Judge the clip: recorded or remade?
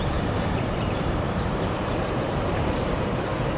remade